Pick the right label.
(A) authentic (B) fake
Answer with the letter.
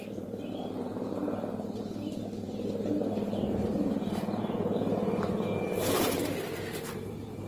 B